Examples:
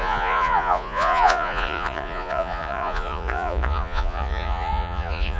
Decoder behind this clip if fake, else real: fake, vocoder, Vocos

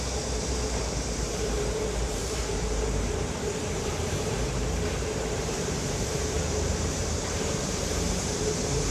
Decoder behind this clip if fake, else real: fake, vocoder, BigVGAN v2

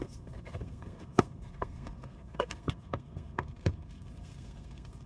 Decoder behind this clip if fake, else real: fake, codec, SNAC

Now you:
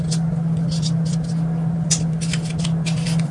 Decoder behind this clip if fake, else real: real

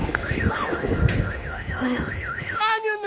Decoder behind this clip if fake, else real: fake, autoencoder, DAC-VAE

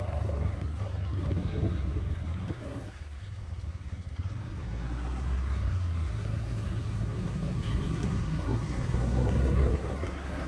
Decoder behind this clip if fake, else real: fake, codec, SNAC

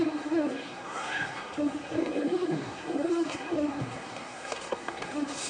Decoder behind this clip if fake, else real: fake, codec, SNAC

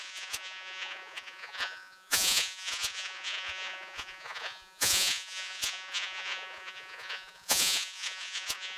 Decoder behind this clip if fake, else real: fake, vocoder, Vocos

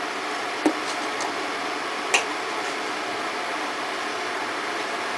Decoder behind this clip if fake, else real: real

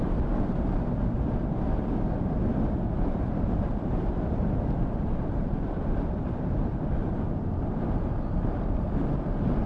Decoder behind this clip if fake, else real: fake, vocoder, BigVGAN v2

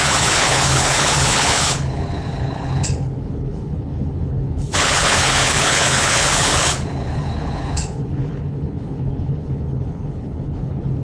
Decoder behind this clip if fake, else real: fake, codec, HILCodec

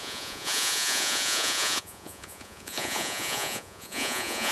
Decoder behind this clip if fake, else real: fake, vocoder, Vocos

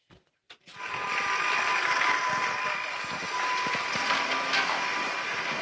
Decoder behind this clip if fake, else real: real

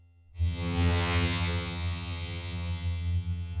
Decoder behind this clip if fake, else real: fake, vocoder, HiFi-GAN